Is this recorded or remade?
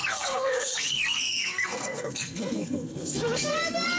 remade